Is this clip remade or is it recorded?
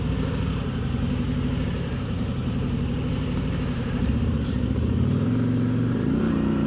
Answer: remade